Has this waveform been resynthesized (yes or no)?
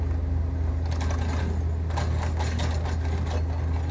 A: no